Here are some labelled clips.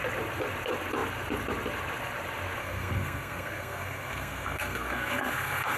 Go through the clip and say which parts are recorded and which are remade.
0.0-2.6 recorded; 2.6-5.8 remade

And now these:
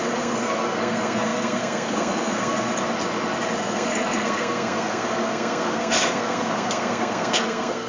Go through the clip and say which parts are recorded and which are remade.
0.0-2.7 remade; 2.7-3.6 recorded; 3.6-7.9 remade

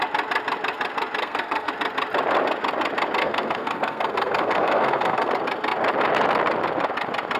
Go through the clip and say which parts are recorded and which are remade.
0.0-1.2 recorded; 1.2-1.7 remade; 1.7-3.2 recorded; 3.2-5.3 remade; 5.3-7.4 recorded

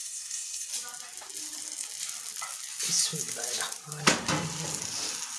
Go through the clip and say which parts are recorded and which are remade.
0.0-0.7 remade; 0.7-5.4 recorded

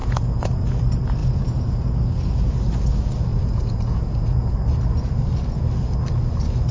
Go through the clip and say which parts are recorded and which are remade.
0.0-0.7 remade; 0.7-1.2 recorded; 1.2-2.0 remade; 2.0-3.3 recorded; 3.3-4.5 remade; 4.5-6.7 recorded

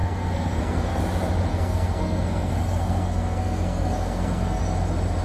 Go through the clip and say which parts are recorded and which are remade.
0.0-1.0 remade; 1.0-1.5 recorded; 1.5-4.6 remade; 4.6-5.2 recorded

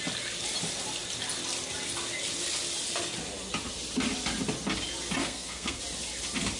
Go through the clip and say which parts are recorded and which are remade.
0.0-5.2 recorded; 5.2-5.8 remade; 5.8-6.6 recorded

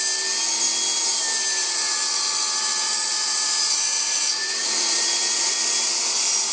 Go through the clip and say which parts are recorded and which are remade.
0.0-1.6 recorded; 1.6-5.5 remade; 5.5-6.5 recorded